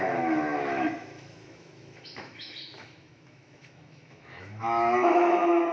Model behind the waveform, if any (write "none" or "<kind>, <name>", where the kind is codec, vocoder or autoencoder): autoencoder, DAC-VAE